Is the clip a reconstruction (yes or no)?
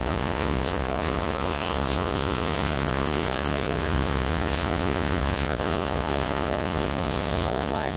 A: yes